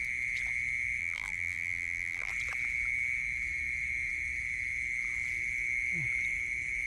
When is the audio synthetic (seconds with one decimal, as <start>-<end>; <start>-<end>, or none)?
1.0-2.3